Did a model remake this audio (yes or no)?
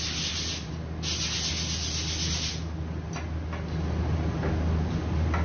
no